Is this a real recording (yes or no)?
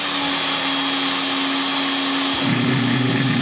yes